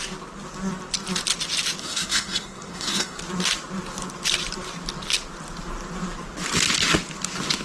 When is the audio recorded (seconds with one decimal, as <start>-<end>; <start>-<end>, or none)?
0.0-1.8; 3.2-7.6